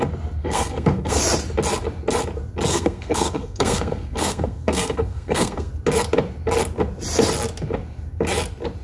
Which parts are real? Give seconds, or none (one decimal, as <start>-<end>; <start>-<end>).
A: 0.0-0.4; 1.2-2.7; 5.7-8.8